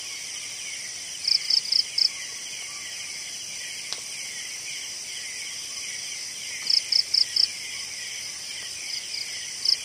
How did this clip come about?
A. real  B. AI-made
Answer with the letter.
A